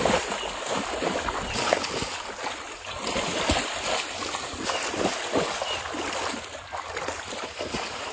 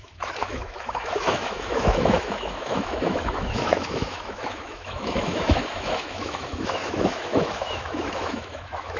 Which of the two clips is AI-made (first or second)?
second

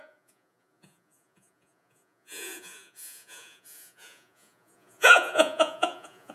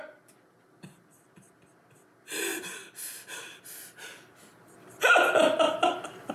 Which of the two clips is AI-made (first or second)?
first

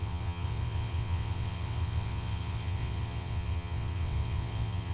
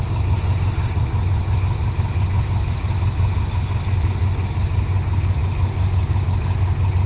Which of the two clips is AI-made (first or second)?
first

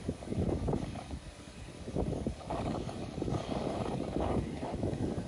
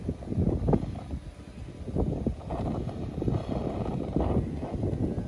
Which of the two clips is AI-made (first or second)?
first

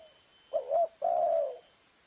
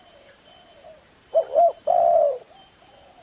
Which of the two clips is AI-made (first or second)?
second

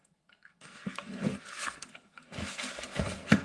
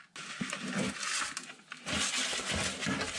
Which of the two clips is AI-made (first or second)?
first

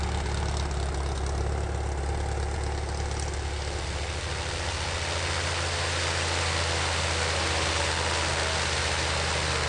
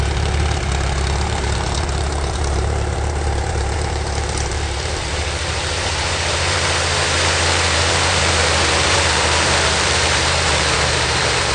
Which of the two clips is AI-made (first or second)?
second